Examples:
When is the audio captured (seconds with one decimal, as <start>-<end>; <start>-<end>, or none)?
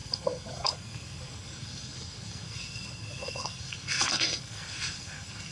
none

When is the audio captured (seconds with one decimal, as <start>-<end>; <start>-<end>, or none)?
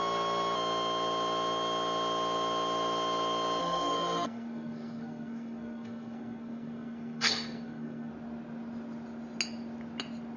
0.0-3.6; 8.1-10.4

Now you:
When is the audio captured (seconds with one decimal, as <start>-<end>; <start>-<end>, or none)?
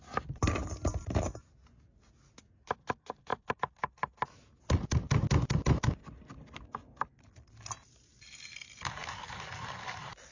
0.0-10.3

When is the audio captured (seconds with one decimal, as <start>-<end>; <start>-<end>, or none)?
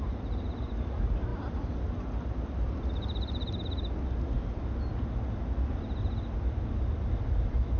0.0-7.8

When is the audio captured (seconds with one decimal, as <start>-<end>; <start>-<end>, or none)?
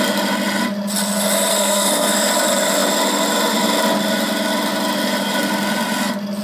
0.0-1.5; 2.3-6.4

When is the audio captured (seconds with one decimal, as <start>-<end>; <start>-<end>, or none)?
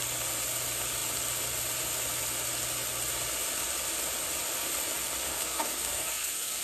0.0-5.3